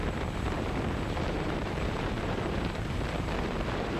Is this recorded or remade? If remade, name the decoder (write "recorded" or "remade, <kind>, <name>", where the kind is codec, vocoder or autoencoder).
remade, vocoder, BigVGAN v2